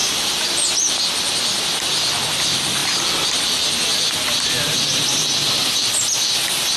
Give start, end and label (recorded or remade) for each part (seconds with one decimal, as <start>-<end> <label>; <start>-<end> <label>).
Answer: 0.0-6.8 recorded